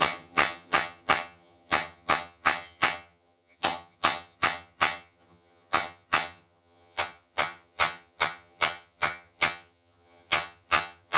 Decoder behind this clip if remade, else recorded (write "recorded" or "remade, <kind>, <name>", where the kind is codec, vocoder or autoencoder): remade, vocoder, HiFi-GAN